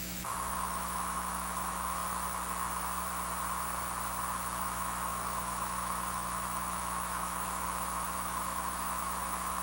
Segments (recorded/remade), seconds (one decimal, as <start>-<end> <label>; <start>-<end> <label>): 0.0-2.0 remade; 2.0-4.6 recorded; 4.6-9.6 remade